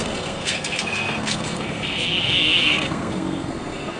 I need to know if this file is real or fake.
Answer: fake